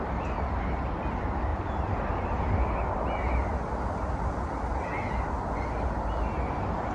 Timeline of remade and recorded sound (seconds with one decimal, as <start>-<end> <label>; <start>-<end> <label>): 0.0-6.9 recorded